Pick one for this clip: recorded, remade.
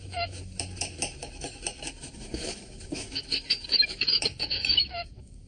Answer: remade